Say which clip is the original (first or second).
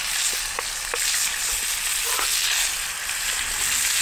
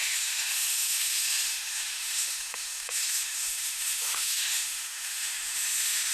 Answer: first